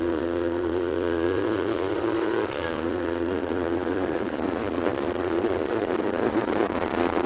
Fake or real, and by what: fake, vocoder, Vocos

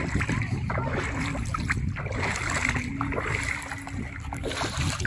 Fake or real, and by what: real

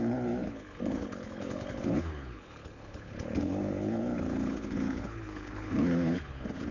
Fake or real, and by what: fake, codec, HILCodec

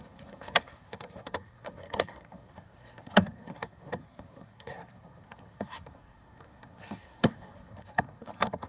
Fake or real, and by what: fake, codec, SNAC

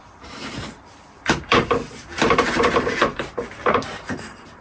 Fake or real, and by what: fake, vocoder, BigVGAN v2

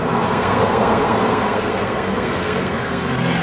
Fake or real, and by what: fake, codec, SNAC